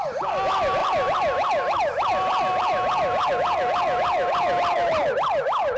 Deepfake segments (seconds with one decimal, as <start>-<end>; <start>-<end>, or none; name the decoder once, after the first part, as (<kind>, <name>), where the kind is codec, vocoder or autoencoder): none

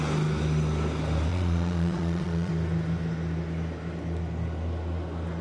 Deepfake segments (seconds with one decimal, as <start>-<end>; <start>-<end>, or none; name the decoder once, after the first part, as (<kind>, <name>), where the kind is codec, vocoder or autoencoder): 1.3-2.5 (vocoder, Vocos)

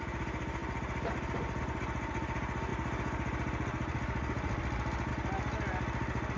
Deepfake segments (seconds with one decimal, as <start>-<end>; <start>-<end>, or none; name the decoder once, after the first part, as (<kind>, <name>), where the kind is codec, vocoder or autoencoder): none

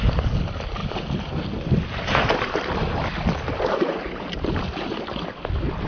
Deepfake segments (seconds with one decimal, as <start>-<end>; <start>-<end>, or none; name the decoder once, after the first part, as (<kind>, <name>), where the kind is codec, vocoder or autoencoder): none

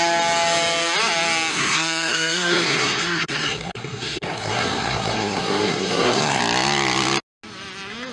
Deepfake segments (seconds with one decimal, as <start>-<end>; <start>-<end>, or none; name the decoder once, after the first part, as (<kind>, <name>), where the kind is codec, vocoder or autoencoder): 1.5-6.4 (codec, SNAC)

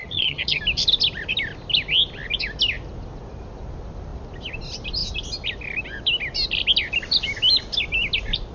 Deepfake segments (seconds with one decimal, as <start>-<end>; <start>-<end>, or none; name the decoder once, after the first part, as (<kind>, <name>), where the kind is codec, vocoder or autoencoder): 0.0-0.6 (vocoder, HiFi-GAN)

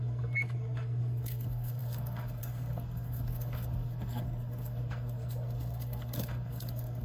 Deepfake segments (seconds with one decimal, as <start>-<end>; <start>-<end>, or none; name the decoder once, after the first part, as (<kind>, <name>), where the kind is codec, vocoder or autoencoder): 0.0-7.0 (codec, SNAC)

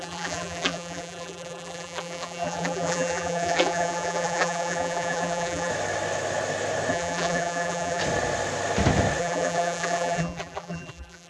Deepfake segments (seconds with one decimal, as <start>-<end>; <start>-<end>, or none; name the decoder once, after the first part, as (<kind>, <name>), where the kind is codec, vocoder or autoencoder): 0.0-5.7 (vocoder, BigVGAN v2); 6.9-8.0; 9.2-11.3